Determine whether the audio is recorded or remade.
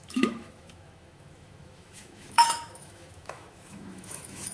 remade